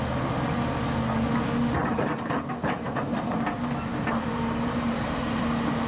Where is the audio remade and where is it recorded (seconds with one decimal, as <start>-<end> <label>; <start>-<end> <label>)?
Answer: 0.0-1.8 recorded; 1.8-3.0 remade; 3.0-3.9 recorded; 3.9-5.4 remade; 5.4-5.9 recorded